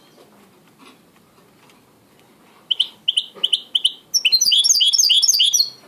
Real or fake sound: real